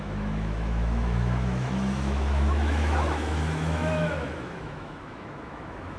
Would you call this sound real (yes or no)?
no